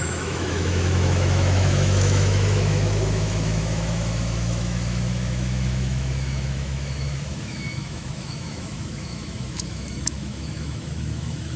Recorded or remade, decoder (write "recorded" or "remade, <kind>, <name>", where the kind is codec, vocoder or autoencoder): remade, autoencoder, DAC-VAE